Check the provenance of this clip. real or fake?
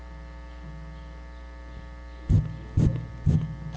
real